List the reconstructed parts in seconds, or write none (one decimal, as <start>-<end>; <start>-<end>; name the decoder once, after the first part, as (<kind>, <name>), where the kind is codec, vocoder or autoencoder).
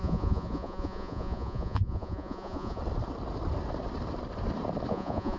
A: 0.0-2.8 (vocoder, Vocos); 4.9-5.4